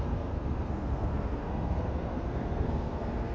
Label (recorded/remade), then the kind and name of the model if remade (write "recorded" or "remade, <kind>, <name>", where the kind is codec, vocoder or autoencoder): remade, codec, SNAC